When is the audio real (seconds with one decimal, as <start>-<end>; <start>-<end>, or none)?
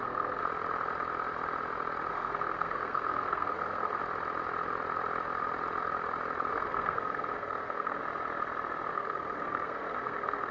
0.4-2.1; 4.0-6.5; 8.0-8.9